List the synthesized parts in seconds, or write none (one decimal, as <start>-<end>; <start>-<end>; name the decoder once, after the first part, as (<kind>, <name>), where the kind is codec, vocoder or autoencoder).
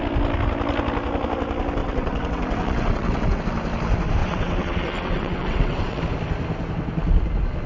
1.8-3.4 (vocoder, WaveNeXt); 4.2-6.0